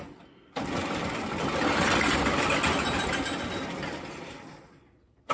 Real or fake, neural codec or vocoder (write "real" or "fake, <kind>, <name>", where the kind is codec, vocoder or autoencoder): fake, vocoder, BigVGAN v2